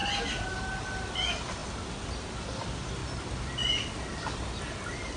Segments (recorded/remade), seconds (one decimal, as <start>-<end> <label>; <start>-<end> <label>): 0.0-5.2 recorded